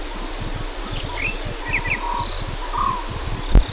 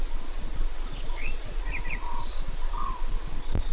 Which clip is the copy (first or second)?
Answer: second